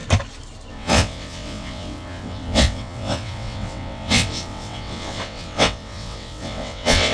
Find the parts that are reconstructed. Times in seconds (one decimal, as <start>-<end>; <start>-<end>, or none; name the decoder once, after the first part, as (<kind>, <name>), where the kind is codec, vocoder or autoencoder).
0.7-7.1 (vocoder, WaveNeXt)